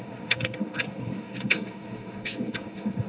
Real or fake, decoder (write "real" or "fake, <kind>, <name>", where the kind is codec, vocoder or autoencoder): fake, codec, SNAC